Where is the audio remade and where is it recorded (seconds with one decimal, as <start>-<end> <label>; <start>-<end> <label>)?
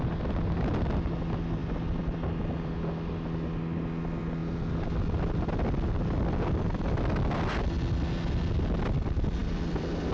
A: 0.0-9.4 recorded; 9.4-10.1 remade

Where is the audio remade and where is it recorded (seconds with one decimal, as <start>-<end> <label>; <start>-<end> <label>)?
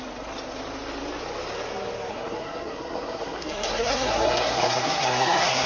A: 0.0-2.1 recorded; 2.1-5.7 remade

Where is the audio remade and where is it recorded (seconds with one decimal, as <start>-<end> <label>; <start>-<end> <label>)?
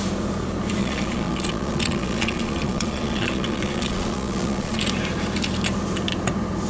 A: 0.0-0.8 recorded; 0.8-4.8 remade; 4.8-6.7 recorded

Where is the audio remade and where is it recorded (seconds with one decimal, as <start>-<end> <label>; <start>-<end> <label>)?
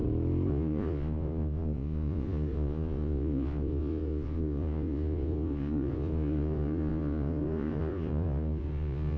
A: 0.0-0.5 recorded; 0.5-9.2 remade